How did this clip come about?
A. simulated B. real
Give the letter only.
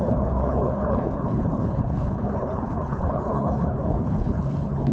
A